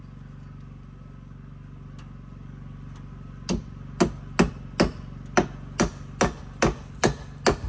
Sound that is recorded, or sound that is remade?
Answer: recorded